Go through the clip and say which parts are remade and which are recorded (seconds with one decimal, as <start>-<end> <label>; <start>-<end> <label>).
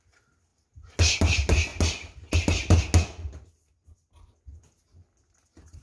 0.0-5.8 recorded